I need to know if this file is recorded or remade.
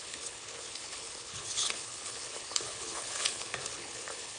remade